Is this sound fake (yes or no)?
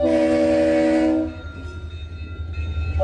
no